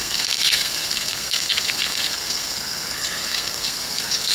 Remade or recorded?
remade